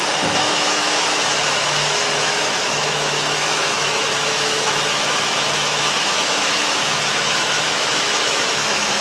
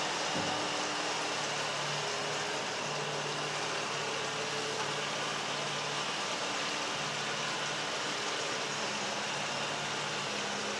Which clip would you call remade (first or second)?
first